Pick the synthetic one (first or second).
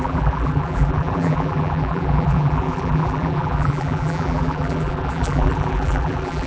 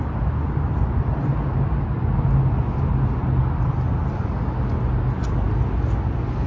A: first